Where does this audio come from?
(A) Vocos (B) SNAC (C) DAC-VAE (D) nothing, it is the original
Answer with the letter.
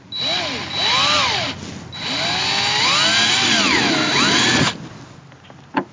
D